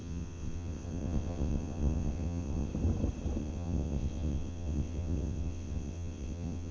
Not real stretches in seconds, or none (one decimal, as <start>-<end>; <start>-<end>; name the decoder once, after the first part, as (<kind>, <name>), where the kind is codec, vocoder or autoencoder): 0.0-2.7 (vocoder, WaveNeXt); 3.4-6.7